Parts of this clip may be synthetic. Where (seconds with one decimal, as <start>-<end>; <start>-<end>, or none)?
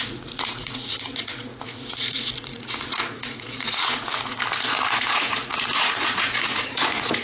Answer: 0.0-7.2